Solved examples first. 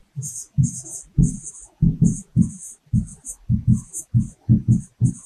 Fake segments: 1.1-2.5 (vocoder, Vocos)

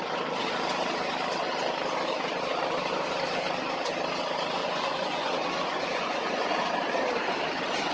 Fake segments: 4.6-6.5 (vocoder, Vocos)